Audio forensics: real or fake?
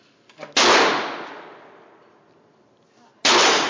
real